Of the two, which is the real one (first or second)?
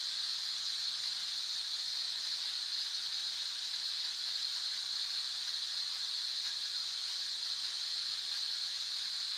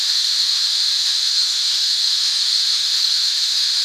first